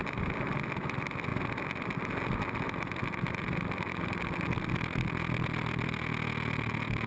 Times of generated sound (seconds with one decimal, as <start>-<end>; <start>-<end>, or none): none

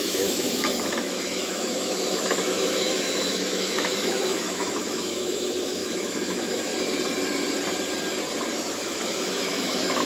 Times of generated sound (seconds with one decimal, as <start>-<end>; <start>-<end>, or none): 0.0-6.7; 8.5-10.1

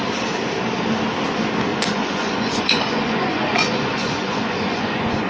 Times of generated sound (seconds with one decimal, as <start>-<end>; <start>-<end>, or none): 1.7-5.3

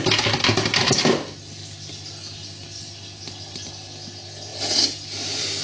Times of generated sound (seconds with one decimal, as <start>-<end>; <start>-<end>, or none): none

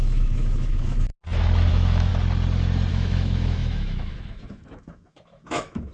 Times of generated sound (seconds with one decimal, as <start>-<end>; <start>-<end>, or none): 0.0-1.1; 1.7-2.1; 2.9-5.9

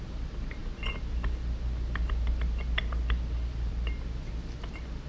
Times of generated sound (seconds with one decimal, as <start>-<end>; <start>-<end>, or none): none

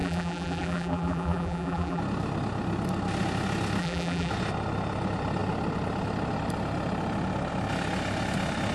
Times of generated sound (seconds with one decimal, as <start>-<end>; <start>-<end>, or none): 0.0-2.0; 3.8-4.3

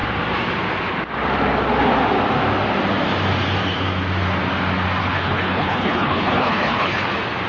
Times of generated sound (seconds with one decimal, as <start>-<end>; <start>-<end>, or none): 5.0-7.1